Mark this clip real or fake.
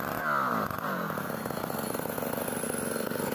real